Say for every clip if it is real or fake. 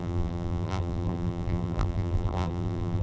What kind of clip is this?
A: fake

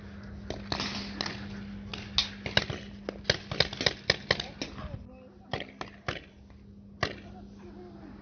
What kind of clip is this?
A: real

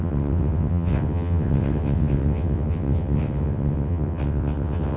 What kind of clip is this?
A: fake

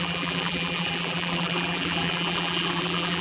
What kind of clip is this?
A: fake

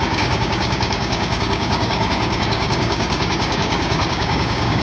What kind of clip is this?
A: fake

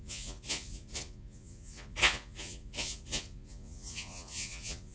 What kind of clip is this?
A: fake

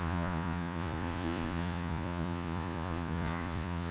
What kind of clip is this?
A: fake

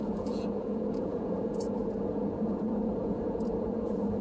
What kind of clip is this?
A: fake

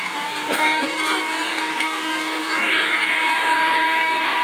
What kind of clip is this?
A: fake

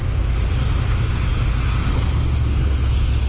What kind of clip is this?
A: real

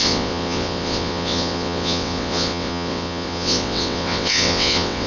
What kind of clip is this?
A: fake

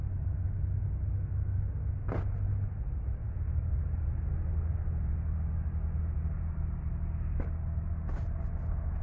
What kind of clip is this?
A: real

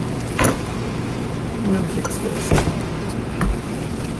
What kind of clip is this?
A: real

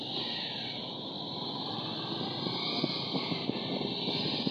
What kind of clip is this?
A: real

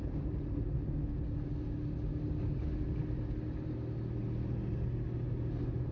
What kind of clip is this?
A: real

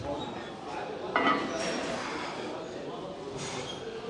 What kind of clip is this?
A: real